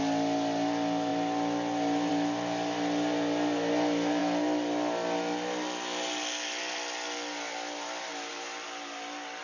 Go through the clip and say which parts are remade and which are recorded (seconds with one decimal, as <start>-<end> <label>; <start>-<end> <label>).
0.0-9.4 recorded